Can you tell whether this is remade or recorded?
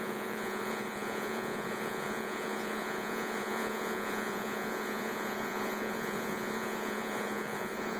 remade